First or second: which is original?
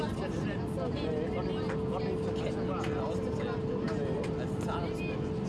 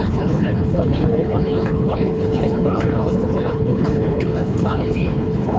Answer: first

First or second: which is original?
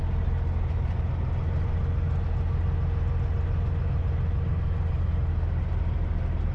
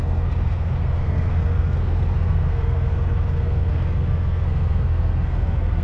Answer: first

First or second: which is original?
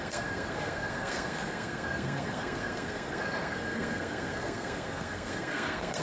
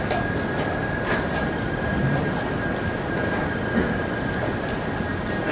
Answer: second